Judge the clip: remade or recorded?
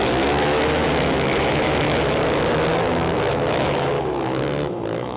remade